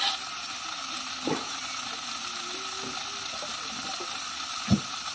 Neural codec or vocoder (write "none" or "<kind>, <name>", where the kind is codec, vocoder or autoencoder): none